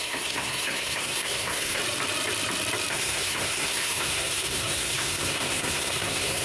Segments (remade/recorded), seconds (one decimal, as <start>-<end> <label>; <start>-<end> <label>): 0.0-1.8 remade; 1.8-2.9 recorded; 2.9-6.4 remade